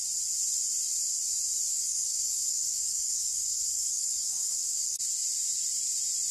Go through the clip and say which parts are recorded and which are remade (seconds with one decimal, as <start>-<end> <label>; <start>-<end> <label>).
0.0-1.7 recorded; 1.7-5.0 remade; 5.0-6.3 recorded